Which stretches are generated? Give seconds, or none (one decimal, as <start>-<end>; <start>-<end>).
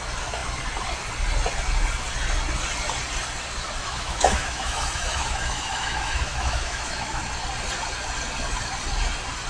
3.8-7.2